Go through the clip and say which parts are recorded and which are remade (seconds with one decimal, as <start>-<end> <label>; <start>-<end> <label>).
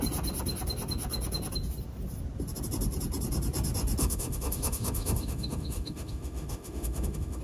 0.0-4.0 recorded; 4.0-7.4 remade